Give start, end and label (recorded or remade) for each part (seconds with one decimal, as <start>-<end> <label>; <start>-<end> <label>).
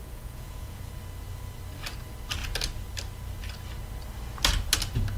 0.0-0.9 remade; 0.9-5.2 recorded